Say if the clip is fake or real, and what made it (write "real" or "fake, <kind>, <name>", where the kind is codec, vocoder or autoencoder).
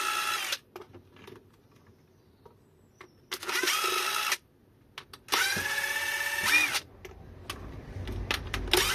real